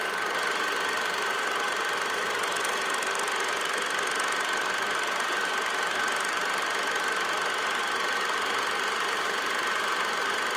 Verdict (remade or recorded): recorded